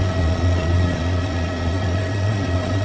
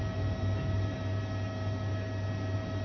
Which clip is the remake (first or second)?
first